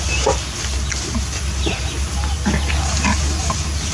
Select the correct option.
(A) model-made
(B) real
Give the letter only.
B